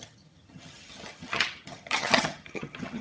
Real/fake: fake